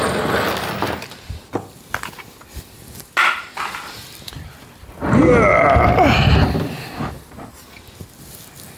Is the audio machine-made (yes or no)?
no